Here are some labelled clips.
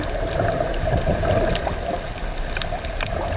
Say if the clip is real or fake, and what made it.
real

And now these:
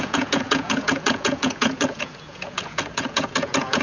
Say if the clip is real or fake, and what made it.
fake, vocoder, Vocos